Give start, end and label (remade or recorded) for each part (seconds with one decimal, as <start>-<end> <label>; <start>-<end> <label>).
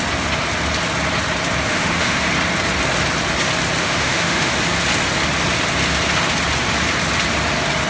0.0-1.7 recorded; 1.7-2.2 remade; 2.2-3.8 recorded; 3.8-4.5 remade; 4.5-7.9 recorded